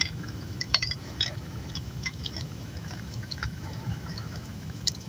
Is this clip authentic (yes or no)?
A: no